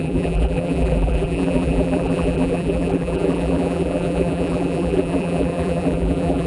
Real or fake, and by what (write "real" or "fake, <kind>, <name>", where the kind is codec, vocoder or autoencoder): fake, vocoder, BigVGAN v2